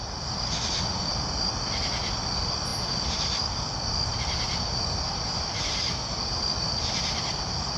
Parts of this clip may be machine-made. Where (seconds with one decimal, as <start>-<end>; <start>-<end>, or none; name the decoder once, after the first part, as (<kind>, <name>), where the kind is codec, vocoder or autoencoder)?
4.1-4.6 (vocoder, BigVGAN v2)